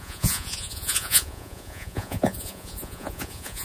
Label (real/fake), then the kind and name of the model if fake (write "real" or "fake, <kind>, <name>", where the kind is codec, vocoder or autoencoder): fake, vocoder, Vocos